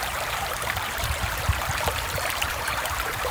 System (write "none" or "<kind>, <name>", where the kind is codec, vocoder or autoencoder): vocoder, BigVGAN v2